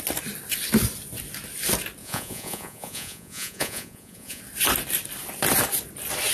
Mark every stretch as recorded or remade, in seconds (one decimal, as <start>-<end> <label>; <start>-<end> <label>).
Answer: 0.0-2.0 recorded; 2.0-4.4 remade; 4.4-6.3 recorded